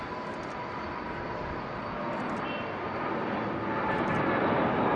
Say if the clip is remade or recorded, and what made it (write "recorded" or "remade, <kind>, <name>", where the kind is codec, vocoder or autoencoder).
recorded